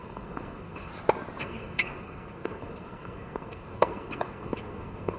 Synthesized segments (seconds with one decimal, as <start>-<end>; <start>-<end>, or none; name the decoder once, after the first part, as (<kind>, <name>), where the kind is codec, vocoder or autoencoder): 0.0-0.9 (codec, SNAC); 1.4-5.2